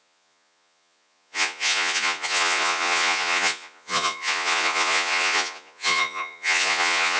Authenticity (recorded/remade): remade